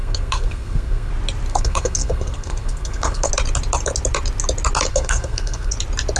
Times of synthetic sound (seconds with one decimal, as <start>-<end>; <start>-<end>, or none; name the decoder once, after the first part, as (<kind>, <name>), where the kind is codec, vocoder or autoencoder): 0.0-1.1 (codec, SNAC); 1.5-3.3; 4.9-5.7